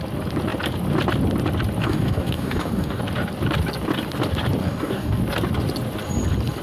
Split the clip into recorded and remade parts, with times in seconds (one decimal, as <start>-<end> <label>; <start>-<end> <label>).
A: 0.0-1.8 recorded; 1.8-3.0 remade; 3.0-4.6 recorded; 4.6-5.2 remade; 5.2-6.6 recorded